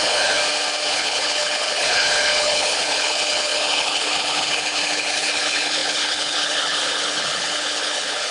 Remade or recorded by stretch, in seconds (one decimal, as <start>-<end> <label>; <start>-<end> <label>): 0.0-0.4 remade; 0.4-0.9 recorded; 0.9-8.3 remade

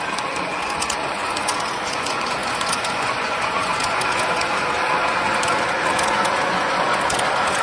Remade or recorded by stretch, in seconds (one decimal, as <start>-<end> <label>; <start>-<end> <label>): 0.0-7.6 remade

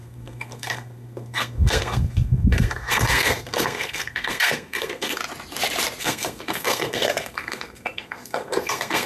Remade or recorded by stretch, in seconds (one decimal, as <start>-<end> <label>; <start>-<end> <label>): 0.0-5.2 remade; 5.2-6.0 recorded; 6.0-9.1 remade

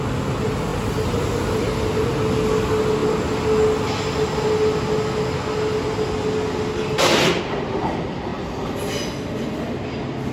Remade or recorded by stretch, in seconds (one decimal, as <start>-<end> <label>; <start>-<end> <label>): 0.0-10.3 recorded

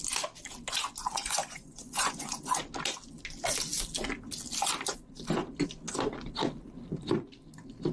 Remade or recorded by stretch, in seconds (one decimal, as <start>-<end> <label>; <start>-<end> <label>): 0.0-1.0 recorded; 1.0-2.6 remade; 2.6-7.9 recorded